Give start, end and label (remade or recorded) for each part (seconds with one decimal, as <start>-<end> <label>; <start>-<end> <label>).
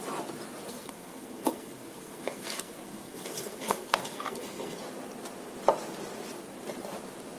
0.0-0.7 recorded; 0.7-4.8 remade; 4.8-7.4 recorded